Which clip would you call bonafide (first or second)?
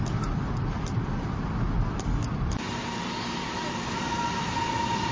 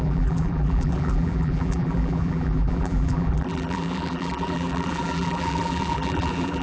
first